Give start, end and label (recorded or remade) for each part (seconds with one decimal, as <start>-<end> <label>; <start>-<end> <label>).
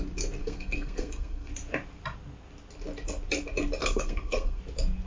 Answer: 0.0-0.4 recorded; 0.4-1.5 remade; 1.5-3.8 recorded; 3.8-4.6 remade; 4.6-5.1 recorded